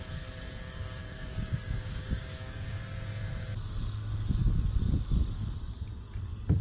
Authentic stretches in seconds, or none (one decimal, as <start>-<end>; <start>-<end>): 0.0-1.0; 2.7-6.6